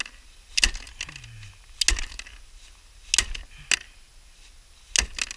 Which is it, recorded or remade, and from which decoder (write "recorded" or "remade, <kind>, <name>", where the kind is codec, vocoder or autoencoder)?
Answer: recorded